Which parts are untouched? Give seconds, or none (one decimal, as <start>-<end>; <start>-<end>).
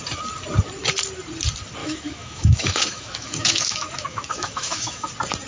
0.0-1.8; 5.1-5.5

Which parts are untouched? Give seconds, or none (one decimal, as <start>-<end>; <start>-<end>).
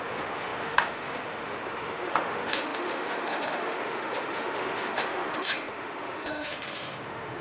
none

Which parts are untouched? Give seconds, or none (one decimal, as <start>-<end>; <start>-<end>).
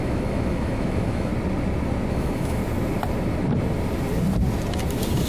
1.3-2.1; 2.6-5.3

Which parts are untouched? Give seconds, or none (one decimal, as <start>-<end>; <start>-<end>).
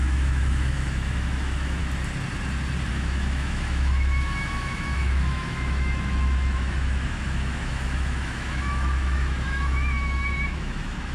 1.8-2.9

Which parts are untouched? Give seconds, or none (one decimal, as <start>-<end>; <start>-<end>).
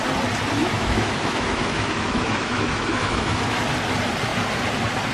0.0-0.6; 3.7-5.1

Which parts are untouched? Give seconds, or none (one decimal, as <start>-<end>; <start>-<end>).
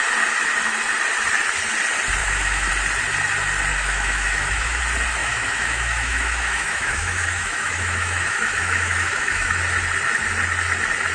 0.0-2.2; 2.7-3.7; 4.8-5.2; 9.6-11.1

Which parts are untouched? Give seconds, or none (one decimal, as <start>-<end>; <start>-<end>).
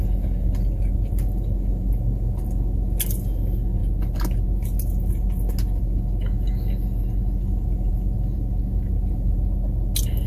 0.0-10.3